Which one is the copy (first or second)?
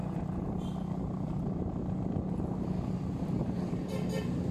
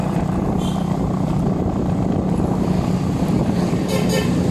second